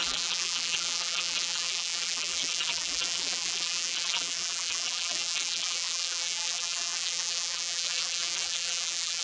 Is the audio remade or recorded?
remade